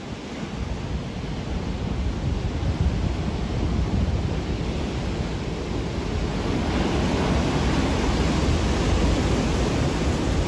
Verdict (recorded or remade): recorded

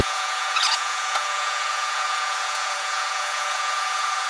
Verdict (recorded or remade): remade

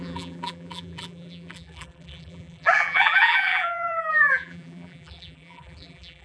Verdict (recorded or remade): remade